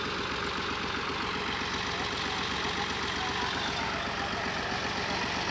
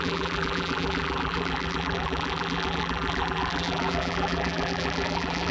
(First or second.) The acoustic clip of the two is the first